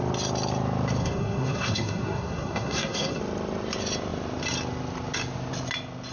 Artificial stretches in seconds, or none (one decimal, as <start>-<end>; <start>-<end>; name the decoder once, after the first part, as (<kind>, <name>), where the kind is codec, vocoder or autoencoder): 1.0-3.2 (codec, SNAC)